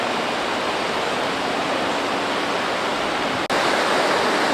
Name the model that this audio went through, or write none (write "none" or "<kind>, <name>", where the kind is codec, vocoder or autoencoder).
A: none